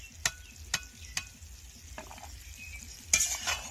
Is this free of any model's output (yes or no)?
yes